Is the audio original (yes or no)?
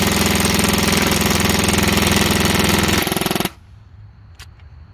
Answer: yes